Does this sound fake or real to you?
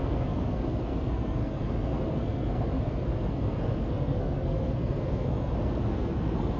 fake